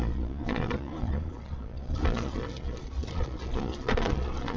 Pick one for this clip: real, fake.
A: fake